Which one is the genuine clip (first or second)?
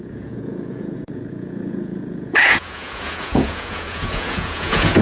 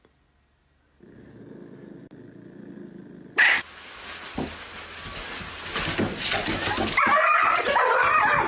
second